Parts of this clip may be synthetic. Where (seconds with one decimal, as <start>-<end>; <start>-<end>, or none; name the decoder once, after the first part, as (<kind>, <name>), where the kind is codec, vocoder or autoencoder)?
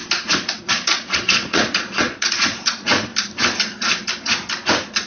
0.6-3.1 (vocoder, Vocos)